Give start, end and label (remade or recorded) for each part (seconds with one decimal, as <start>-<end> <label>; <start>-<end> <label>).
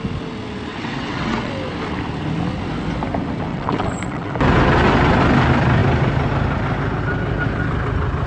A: 0.0-0.7 recorded; 0.7-1.5 remade; 1.5-3.5 recorded; 3.5-4.3 remade; 4.3-8.3 recorded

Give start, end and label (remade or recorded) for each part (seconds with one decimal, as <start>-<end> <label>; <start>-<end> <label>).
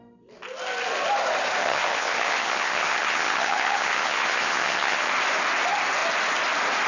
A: 0.0-1.6 recorded; 1.6-5.1 remade; 5.1-6.9 recorded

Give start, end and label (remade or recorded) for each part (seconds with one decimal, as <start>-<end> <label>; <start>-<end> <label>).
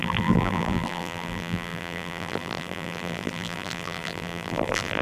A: 0.0-5.0 remade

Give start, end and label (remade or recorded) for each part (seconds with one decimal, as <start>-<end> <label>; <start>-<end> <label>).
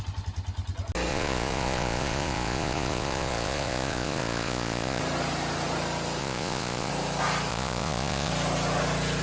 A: 0.0-1.1 recorded; 1.1-5.0 remade; 5.0-6.2 recorded; 6.2-6.9 remade; 6.9-7.5 recorded; 7.5-8.3 remade; 8.3-9.2 recorded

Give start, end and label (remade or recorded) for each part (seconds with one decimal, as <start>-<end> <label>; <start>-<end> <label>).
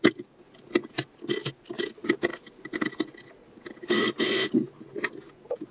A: 0.0-5.7 recorded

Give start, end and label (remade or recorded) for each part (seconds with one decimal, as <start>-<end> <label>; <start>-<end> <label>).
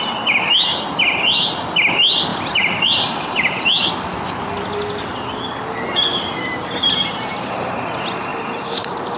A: 0.0-2.3 recorded; 2.3-3.9 remade; 3.9-6.1 recorded; 6.1-7.7 remade; 7.7-8.3 recorded; 8.3-9.2 remade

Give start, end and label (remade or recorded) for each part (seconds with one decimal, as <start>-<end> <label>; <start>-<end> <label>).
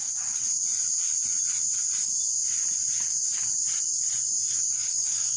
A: 0.0-4.5 recorded; 4.5-5.4 remade